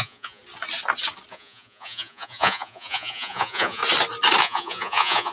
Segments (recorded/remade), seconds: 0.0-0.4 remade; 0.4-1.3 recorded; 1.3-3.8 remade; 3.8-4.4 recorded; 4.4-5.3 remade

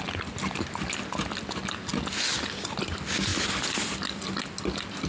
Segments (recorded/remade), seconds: 0.0-5.1 recorded

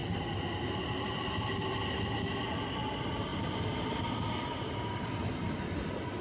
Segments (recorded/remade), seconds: 0.0-6.2 recorded